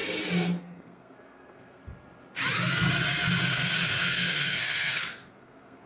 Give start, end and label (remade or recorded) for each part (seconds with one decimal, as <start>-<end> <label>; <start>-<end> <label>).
0.0-0.6 recorded; 0.6-1.8 remade; 1.8-3.4 recorded; 3.4-5.9 remade